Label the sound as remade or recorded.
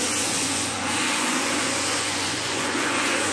remade